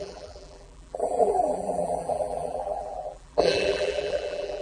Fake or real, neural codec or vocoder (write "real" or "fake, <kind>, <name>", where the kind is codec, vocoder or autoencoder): fake, vocoder, BigVGAN v2